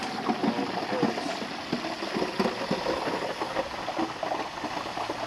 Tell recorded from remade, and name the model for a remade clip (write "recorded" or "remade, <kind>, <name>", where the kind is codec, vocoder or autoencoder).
recorded